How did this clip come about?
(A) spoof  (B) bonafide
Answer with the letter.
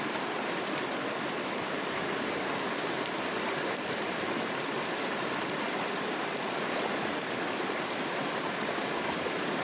A